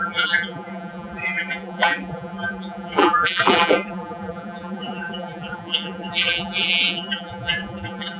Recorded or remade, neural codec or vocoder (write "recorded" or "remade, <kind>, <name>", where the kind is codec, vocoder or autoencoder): remade, vocoder, BigVGAN v2